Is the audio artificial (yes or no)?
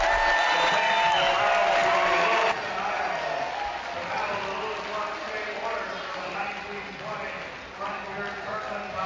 no